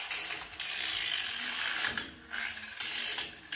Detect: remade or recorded recorded